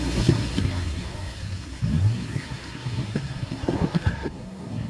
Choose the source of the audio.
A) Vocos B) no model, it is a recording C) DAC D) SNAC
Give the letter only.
D